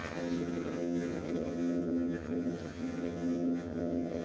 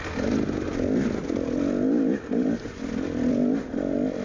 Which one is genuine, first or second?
second